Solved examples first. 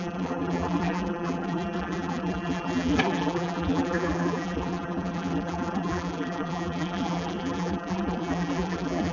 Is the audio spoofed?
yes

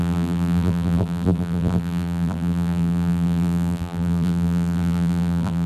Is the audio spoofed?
yes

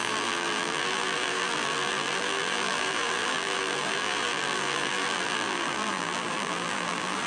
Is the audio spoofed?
yes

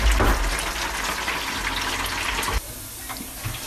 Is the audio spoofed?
no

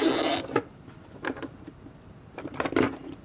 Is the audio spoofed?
no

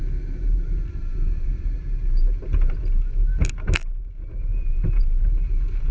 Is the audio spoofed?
yes